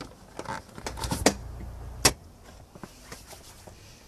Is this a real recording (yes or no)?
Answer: yes